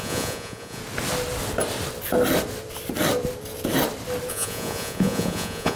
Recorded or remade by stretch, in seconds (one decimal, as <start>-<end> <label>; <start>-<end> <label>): 0.0-0.8 remade; 0.8-4.3 recorded; 4.3-5.8 remade